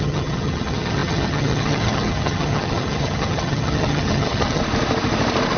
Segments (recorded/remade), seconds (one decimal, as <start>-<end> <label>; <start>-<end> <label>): 0.0-4.6 remade; 4.6-5.6 recorded